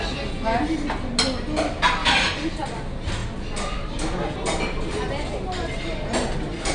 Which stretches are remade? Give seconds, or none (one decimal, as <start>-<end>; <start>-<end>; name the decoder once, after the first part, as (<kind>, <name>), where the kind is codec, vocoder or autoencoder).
none